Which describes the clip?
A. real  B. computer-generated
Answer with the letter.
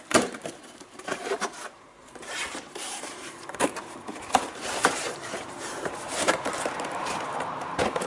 B